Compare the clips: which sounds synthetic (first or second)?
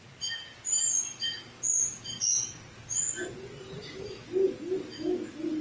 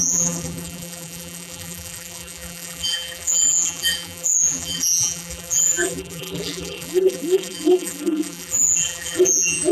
second